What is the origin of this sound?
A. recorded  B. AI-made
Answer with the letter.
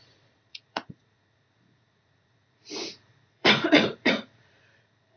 B